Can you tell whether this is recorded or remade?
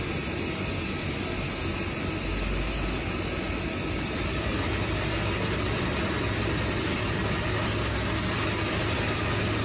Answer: recorded